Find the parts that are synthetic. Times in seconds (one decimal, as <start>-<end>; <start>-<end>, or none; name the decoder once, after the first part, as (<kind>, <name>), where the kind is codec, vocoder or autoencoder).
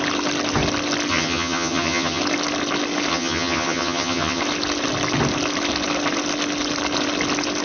1.1-2.2 (vocoder, HiFi-GAN); 3.1-4.4